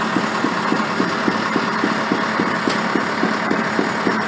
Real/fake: real